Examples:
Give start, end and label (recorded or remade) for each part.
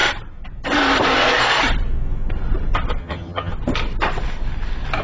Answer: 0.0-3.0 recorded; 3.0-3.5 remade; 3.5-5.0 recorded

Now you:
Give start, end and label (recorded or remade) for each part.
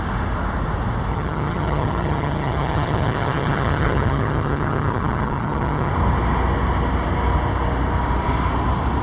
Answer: 0.0-1.1 recorded; 1.1-5.9 remade; 5.9-9.0 recorded